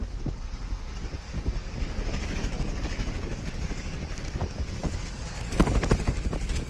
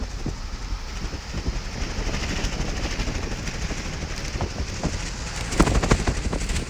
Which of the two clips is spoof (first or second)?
first